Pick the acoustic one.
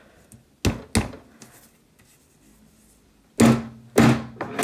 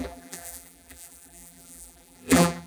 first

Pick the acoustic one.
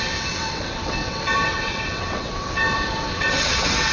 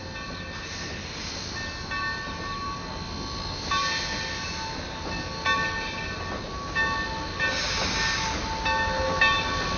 second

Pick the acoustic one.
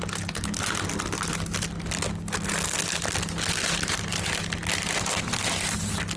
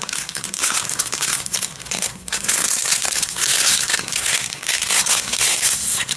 first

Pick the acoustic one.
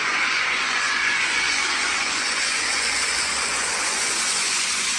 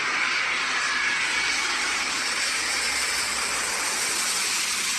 second